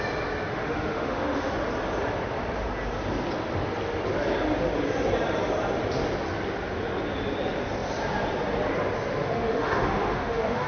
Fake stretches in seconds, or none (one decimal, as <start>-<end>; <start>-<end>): 0.5-1.5; 9.2-10.7